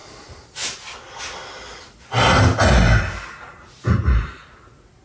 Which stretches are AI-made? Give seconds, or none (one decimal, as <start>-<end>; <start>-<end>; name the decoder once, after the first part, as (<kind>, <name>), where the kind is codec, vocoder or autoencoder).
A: none